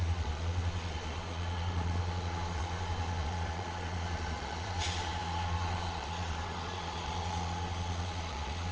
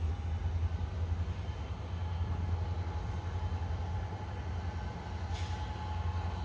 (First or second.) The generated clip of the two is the first